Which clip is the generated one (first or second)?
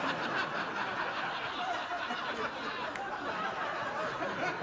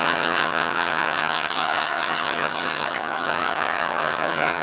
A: second